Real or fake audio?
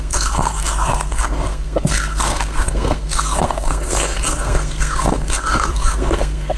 fake